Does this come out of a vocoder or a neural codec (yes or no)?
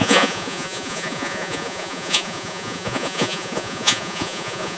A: yes